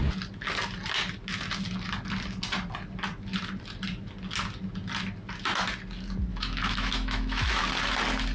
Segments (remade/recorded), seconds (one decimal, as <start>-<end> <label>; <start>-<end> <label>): 0.0-6.3 recorded; 6.3-7.6 remade; 7.6-8.3 recorded